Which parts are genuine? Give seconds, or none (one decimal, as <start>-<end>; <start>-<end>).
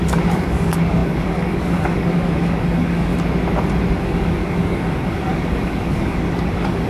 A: 3.1-3.9